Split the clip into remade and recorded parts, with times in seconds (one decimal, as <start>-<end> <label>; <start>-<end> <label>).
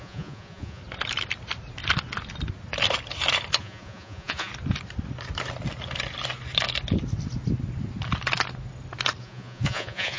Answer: 0.0-0.8 remade; 0.8-3.6 recorded; 3.6-4.5 remade; 4.5-9.2 recorded; 9.2-10.2 remade